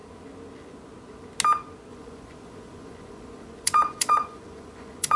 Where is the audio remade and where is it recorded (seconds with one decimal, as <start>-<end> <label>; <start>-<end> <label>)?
0.0-1.9 recorded; 1.9-5.2 remade